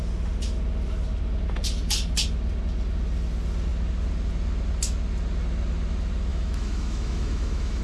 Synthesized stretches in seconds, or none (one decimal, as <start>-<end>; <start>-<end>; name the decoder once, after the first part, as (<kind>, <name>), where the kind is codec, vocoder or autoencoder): 6.3-7.8 (autoencoder, DAC-VAE)